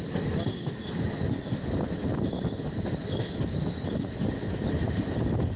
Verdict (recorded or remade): recorded